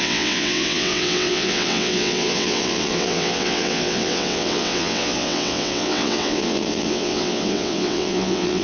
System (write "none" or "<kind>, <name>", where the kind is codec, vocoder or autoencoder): vocoder, WaveNeXt